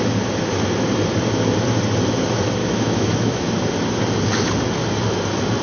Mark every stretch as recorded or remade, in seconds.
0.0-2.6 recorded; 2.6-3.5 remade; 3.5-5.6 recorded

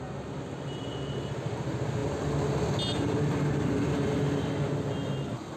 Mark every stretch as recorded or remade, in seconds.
0.0-5.6 recorded

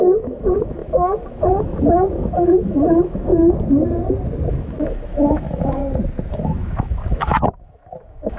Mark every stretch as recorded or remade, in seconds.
0.0-3.3 remade; 3.3-4.5 recorded; 4.5-5.8 remade; 5.8-6.3 recorded; 6.3-8.4 remade

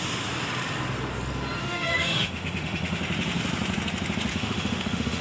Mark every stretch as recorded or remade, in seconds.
0.0-1.6 recorded; 1.6-3.0 remade; 3.0-4.3 recorded; 4.3-5.2 remade

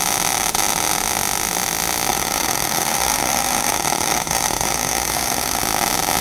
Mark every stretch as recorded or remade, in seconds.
0.0-2.1 recorded; 2.1-5.6 remade; 5.6-6.2 recorded